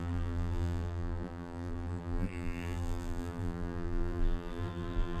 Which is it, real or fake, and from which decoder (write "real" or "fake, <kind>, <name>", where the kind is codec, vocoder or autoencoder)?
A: fake, vocoder, BigVGAN v2